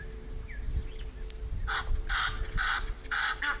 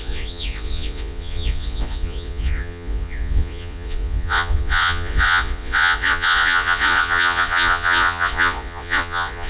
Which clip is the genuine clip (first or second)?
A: first